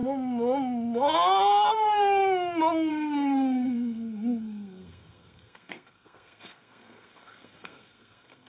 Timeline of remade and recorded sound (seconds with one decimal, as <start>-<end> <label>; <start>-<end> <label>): 0.0-1.7 recorded; 1.7-2.2 remade; 2.2-2.9 recorded; 2.9-8.5 remade